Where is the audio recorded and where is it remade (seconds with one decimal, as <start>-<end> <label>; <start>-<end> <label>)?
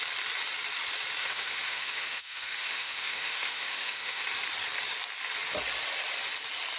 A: 0.0-1.2 recorded; 1.2-4.2 remade; 4.2-6.8 recorded